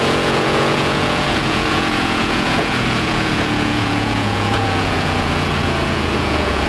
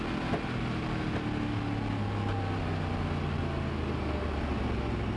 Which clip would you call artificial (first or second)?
first